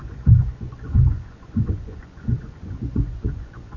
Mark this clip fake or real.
fake